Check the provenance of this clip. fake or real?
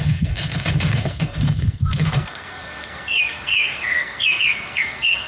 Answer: fake